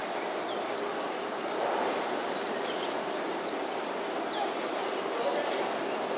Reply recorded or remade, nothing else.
recorded